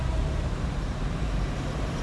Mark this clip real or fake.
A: fake